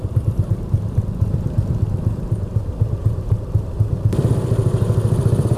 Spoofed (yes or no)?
yes